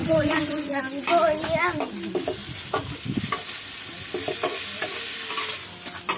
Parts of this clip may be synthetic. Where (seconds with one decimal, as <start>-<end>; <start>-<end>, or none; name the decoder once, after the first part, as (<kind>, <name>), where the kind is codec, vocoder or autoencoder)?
0.0-0.8 (vocoder, Vocos)